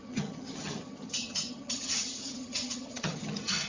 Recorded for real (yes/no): no